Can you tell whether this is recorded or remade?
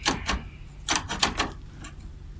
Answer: recorded